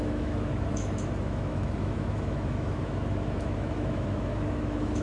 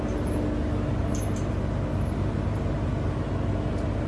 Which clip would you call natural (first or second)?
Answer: second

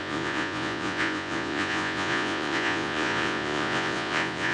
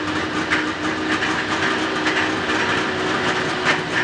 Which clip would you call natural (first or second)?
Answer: second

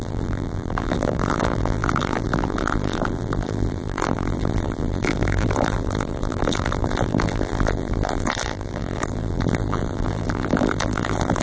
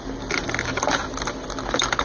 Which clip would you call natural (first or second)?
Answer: second